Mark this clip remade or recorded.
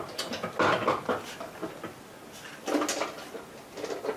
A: recorded